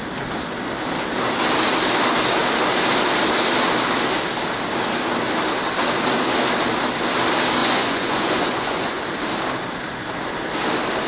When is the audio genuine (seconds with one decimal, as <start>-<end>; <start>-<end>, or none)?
0.0-7.6; 9.0-11.1